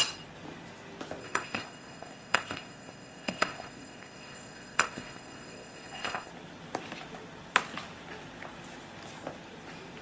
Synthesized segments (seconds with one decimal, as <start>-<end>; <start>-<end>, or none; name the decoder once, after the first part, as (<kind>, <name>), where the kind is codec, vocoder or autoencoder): 1.2-6.3 (codec, ZipCodec)